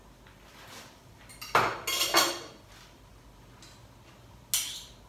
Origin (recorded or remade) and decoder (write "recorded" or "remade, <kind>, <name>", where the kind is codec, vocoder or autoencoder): recorded